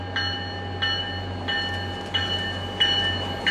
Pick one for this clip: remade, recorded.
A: recorded